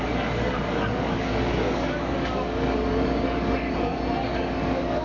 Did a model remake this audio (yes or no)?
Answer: yes